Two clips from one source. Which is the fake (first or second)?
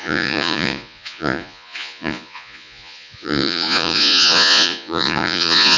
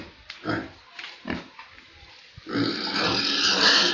first